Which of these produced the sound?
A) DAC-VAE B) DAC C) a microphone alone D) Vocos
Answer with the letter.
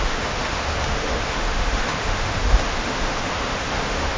A